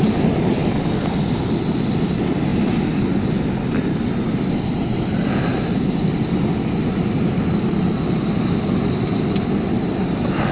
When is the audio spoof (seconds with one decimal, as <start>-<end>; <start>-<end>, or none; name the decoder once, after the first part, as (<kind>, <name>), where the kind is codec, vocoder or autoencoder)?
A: none